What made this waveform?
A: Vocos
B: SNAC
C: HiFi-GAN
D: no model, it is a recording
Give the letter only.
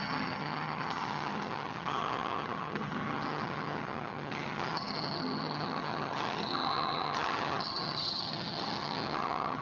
C